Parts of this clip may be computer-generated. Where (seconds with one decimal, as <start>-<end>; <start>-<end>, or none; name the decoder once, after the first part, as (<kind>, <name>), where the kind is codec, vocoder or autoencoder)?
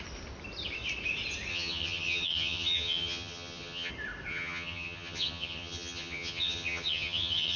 1.5-3.9 (vocoder, HiFi-GAN); 4.3-7.6